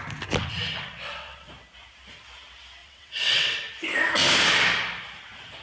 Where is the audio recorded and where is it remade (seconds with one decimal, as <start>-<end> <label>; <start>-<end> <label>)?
0.0-0.4 recorded; 0.4-1.5 remade; 1.5-2.8 recorded; 2.8-3.7 remade; 3.7-5.6 recorded